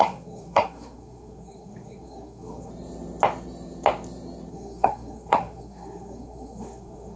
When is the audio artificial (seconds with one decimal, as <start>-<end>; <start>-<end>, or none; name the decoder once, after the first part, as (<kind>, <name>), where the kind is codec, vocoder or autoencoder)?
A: 0.0-2.7 (codec, SNAC); 4.5-7.2